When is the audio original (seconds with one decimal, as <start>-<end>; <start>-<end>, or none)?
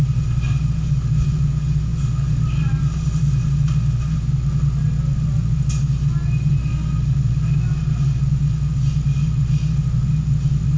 0.0-10.8